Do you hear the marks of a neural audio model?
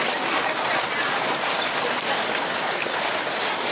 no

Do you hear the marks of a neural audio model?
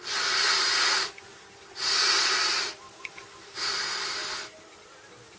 no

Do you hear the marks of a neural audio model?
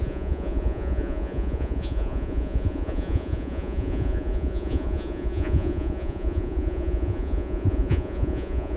yes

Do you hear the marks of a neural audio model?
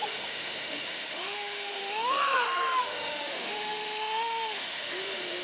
yes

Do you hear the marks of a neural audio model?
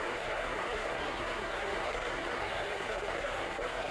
yes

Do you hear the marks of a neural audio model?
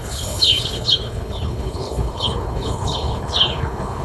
yes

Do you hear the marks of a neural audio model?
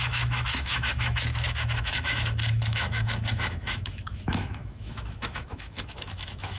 yes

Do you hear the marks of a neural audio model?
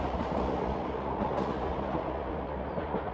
yes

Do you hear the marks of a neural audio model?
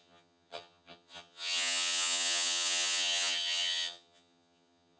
yes